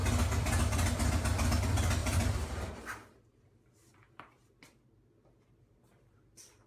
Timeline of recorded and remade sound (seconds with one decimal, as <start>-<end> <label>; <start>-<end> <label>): 0.0-2.0 recorded; 2.0-3.4 remade; 3.4-6.7 recorded